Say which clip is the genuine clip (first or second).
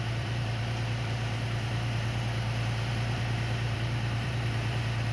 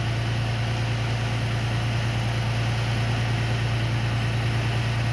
second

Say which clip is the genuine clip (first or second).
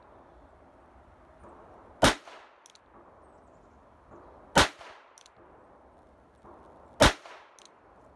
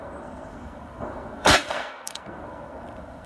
first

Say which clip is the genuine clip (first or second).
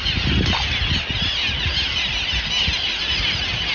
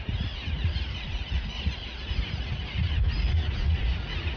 first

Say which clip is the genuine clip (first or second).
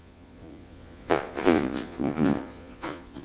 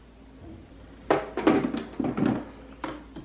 second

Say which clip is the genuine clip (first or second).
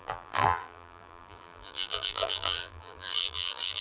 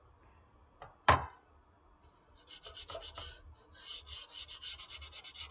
second